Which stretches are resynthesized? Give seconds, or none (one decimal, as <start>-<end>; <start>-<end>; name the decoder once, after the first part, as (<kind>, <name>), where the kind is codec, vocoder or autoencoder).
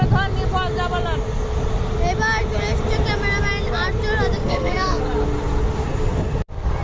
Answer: 4.4-5.0 (codec, SNAC)